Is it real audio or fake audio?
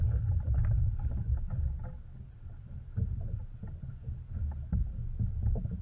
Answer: real